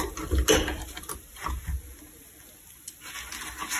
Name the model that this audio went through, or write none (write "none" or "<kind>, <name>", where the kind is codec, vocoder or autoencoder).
none